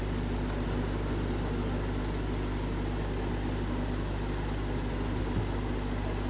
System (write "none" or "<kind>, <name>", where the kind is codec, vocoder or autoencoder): none